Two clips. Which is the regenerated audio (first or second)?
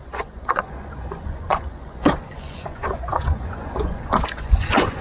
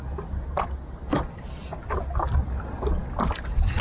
first